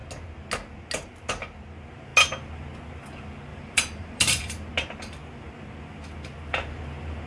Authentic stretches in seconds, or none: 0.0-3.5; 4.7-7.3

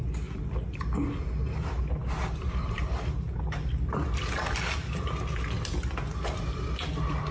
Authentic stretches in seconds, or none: 0.0-1.4; 2.8-7.3

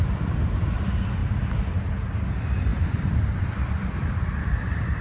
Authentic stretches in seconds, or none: 1.2-2.2